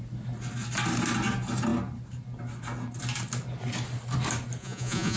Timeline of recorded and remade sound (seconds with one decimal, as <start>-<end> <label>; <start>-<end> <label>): 0.0-4.6 recorded; 4.6-5.2 remade